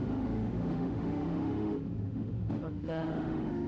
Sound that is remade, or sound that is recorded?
remade